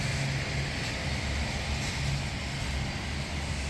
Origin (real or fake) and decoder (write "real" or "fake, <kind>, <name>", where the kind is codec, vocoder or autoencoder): real